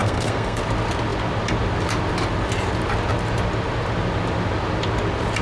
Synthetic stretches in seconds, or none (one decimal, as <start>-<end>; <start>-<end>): 0.0-0.6